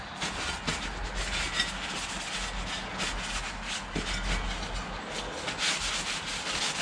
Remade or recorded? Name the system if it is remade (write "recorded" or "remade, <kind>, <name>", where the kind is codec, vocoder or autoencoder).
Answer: recorded